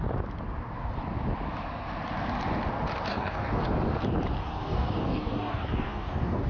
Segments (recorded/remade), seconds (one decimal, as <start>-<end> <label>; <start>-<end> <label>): 0.0-3.1 recorded; 3.1-3.6 remade; 3.6-4.4 recorded; 4.4-6.5 remade